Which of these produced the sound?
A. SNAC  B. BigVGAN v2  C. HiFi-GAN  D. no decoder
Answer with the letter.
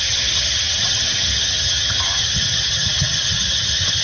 C